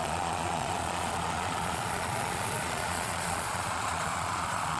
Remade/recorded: remade